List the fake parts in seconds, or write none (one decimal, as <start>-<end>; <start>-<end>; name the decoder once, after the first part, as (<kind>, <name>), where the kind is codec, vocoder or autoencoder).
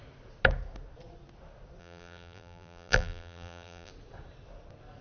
1.8-3.9 (vocoder, BigVGAN v2)